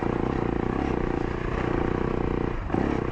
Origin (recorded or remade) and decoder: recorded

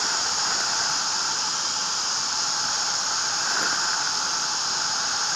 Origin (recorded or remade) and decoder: recorded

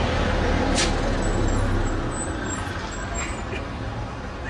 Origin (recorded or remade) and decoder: recorded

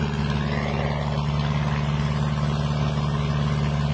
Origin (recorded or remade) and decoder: recorded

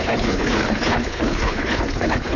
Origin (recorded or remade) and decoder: remade, codec, HILCodec